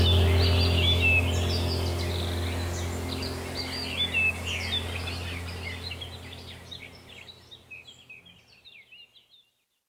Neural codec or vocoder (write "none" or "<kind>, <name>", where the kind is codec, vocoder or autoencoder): none